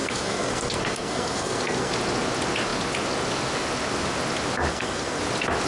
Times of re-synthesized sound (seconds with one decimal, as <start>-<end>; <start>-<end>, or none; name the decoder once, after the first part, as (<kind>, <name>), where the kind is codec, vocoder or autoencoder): 0.0-1.9 (codec, SNAC); 4.7-5.2